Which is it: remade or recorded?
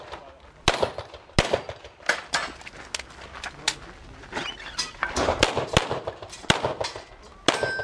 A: recorded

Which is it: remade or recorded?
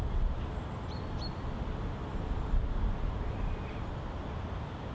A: recorded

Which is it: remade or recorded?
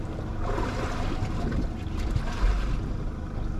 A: recorded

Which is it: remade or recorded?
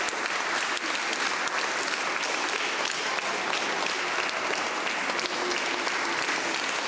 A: recorded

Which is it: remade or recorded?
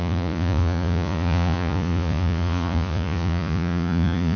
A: remade